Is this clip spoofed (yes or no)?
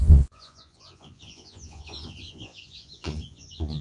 yes